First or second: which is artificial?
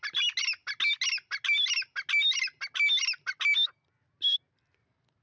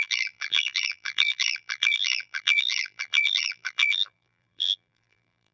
second